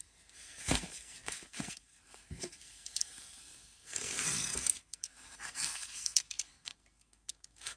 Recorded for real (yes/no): no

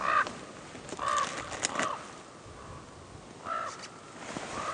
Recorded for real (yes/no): yes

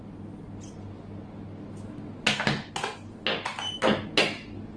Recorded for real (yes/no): yes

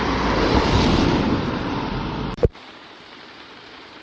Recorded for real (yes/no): no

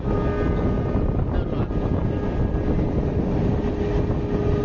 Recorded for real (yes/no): yes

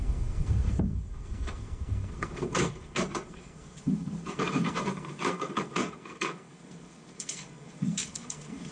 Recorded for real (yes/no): no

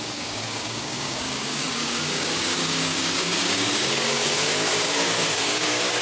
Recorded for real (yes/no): no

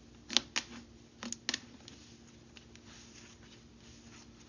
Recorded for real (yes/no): yes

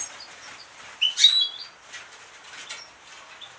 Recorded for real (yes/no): yes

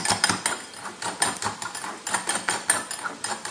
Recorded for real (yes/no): yes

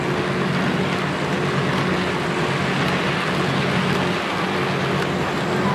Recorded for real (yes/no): yes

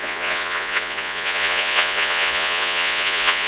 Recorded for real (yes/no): no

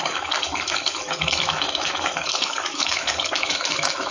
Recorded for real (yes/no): no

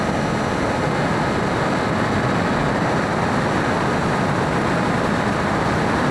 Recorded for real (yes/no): yes